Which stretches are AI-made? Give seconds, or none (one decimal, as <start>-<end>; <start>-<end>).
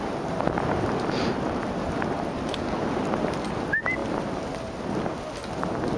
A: none